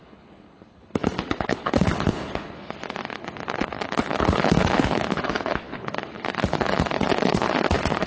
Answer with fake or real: fake